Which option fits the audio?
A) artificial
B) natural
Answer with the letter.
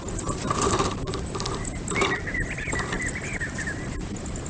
B